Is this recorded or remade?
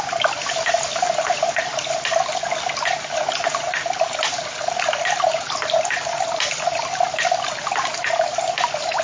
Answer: recorded